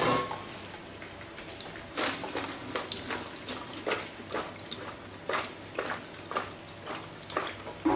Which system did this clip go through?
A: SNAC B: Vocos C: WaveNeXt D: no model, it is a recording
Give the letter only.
D